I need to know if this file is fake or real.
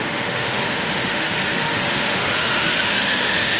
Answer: fake